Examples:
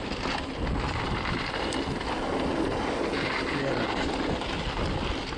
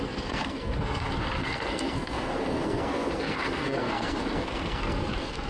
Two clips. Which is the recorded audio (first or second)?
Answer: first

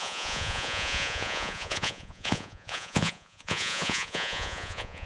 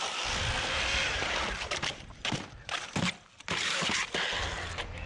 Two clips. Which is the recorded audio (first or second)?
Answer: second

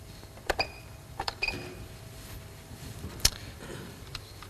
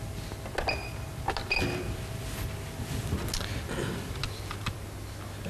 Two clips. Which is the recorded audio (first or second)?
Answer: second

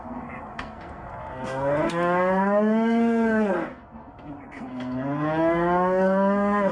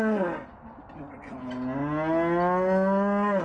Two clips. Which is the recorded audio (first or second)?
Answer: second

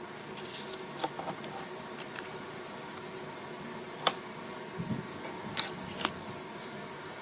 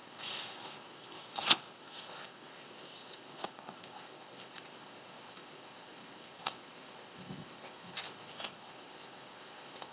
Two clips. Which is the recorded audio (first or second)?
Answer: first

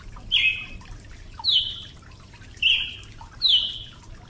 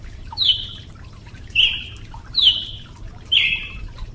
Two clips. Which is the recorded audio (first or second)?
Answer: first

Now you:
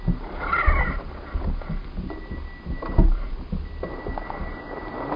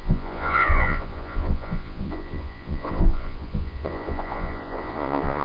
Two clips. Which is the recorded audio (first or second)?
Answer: first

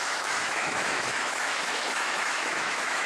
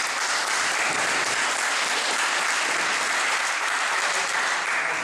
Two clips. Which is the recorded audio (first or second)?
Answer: second